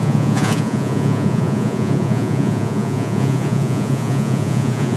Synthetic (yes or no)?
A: yes